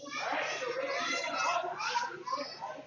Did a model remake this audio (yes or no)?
no